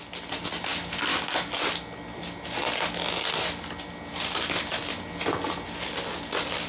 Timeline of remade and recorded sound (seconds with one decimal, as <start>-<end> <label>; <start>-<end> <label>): 0.0-6.7 recorded